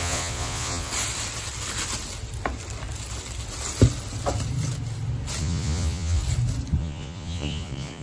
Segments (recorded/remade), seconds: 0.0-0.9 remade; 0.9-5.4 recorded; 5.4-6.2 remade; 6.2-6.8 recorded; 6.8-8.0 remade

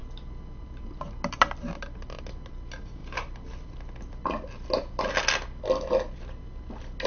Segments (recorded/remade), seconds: 0.0-7.1 recorded